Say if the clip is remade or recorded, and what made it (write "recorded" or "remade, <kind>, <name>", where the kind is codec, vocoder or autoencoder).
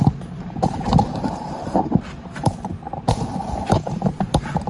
remade, vocoder, BigVGAN v2